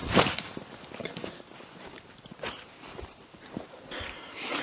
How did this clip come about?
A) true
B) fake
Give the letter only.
B